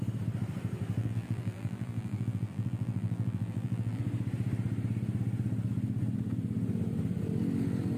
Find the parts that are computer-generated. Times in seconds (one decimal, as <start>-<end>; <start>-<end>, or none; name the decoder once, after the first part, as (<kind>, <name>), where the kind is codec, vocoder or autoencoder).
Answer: 1.0-4.0 (vocoder, BigVGAN v2)